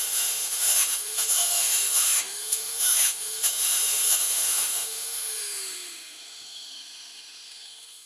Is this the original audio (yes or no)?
no